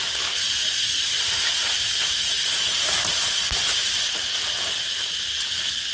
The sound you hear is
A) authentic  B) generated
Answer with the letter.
A